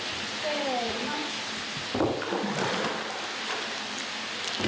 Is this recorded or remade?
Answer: recorded